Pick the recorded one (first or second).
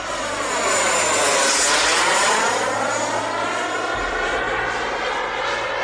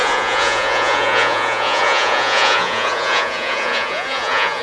first